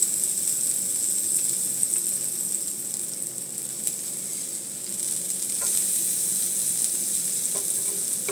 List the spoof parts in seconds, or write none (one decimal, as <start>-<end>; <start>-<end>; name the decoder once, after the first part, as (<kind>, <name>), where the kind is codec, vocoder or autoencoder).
none